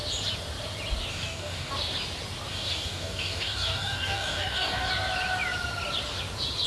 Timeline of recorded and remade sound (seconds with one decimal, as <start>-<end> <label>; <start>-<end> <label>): 0.0-1.1 recorded; 1.1-1.7 remade; 1.7-2.5 recorded; 2.5-4.9 remade; 4.9-6.7 recorded